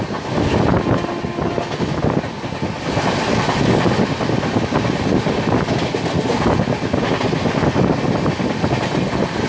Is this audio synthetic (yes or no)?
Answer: no